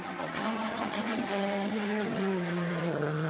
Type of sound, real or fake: fake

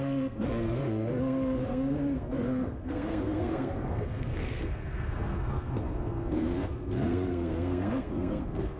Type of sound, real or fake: fake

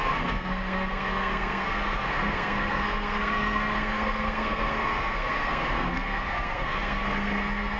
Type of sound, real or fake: fake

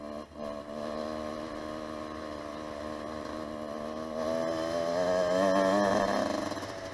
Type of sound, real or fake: real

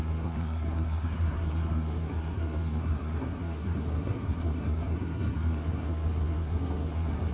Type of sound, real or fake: fake